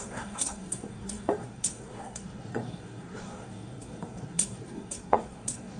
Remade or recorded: remade